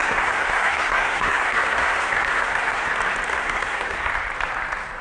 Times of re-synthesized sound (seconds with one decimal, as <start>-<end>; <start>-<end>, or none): 0.0-2.9; 3.3-4.1